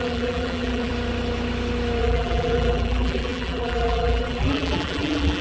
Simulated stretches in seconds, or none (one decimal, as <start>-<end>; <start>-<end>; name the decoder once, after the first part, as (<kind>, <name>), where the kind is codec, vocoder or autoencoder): 0.0-0.9 (vocoder, BigVGAN v2); 2.0-5.4